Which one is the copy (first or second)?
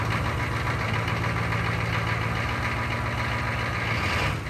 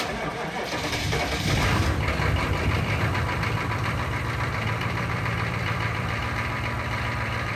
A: second